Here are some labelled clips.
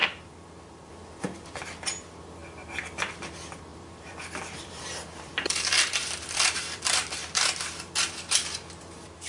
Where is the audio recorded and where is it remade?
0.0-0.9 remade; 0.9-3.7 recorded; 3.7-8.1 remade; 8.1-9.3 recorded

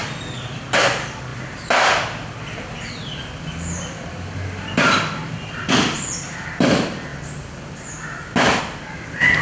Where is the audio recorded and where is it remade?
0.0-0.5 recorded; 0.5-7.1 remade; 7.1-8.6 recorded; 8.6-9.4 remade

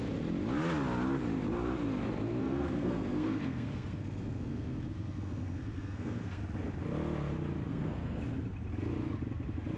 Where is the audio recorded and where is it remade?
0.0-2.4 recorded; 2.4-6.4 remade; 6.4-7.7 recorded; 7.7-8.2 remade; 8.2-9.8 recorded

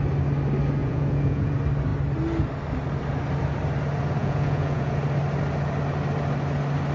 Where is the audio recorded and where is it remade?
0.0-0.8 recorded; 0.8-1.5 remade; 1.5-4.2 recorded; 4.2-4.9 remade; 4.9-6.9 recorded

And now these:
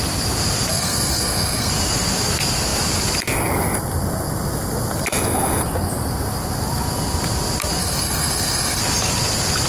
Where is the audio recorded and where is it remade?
0.0-0.7 recorded; 0.7-1.7 remade; 1.7-7.8 recorded; 7.8-8.8 remade; 8.8-9.7 recorded

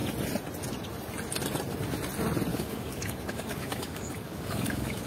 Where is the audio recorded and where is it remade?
0.0-2.5 recorded; 2.5-5.1 remade